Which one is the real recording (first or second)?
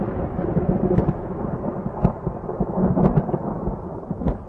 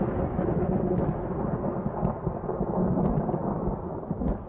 second